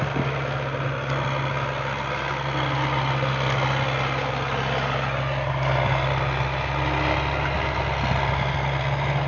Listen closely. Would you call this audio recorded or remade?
recorded